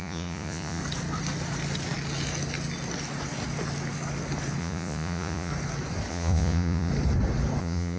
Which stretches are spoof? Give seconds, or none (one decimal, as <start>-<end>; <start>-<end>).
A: 0.0-0.8; 4.6-5.5; 6.1-6.9; 7.6-8.0